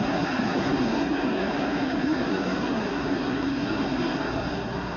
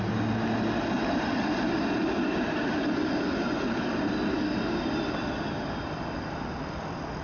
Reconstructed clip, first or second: first